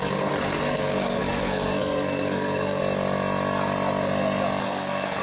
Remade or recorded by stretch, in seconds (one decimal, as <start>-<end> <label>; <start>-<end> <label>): 0.0-2.8 remade; 2.8-4.6 recorded; 4.6-5.2 remade